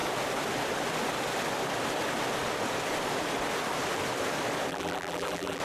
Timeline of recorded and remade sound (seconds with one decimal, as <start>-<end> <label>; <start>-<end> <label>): 0.0-4.7 recorded; 4.7-5.6 remade